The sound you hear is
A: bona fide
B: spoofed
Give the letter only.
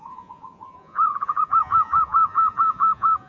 B